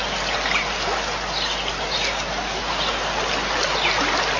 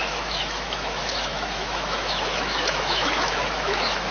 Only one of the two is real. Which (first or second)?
first